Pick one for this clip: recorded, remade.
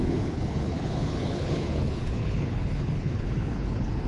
remade